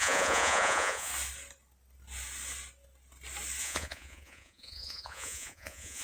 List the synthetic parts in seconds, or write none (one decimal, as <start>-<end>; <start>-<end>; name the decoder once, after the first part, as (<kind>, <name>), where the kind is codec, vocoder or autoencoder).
0.0-1.1 (vocoder, Vocos); 3.6-6.0